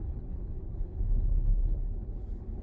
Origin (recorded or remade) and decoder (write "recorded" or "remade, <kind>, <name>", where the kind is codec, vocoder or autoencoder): remade, codec, HILCodec